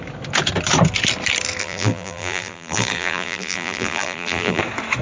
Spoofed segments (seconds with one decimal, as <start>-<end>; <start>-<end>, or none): 1.6-4.6